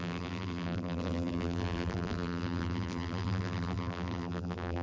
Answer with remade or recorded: remade